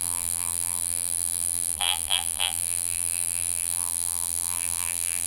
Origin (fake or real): fake